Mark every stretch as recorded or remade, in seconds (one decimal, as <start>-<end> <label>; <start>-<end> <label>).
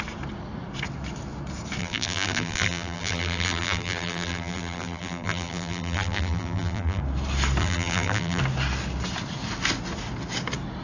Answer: 0.0-1.8 recorded; 1.8-7.0 remade; 7.0-7.6 recorded; 7.6-8.4 remade; 8.4-10.8 recorded